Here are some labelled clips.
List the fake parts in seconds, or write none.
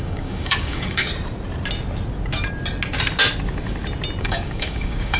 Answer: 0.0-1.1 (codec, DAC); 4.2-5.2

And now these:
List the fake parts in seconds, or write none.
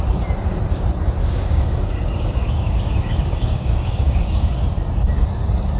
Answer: 1.2-4.5 (codec, DAC)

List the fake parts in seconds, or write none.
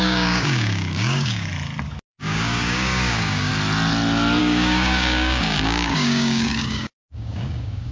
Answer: 0.0-1.5 (codec, DAC); 2.1-3.5; 4.4-7.9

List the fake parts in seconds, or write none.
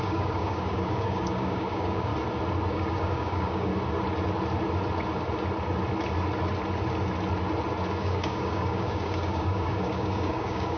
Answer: 0.0-2.1 (codec, DAC); 2.7-3.7; 8.0-10.8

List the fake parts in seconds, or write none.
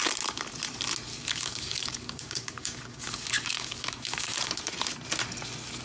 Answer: 1.1-4.6 (codec, DAC)